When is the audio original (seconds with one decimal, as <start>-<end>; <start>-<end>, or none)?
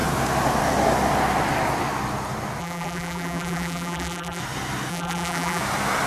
0.0-2.6; 4.4-4.9; 5.6-6.1